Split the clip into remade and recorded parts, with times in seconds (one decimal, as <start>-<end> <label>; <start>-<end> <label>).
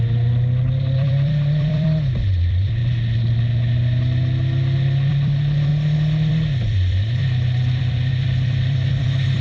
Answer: 0.0-2.8 remade; 2.8-5.1 recorded; 5.1-5.7 remade; 5.7-6.3 recorded; 6.3-7.2 remade; 7.2-7.8 recorded; 7.8-9.4 remade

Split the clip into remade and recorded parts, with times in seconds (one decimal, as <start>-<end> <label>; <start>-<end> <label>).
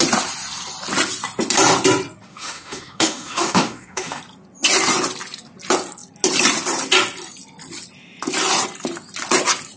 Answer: 0.0-2.3 recorded; 2.3-4.2 remade; 4.2-9.8 recorded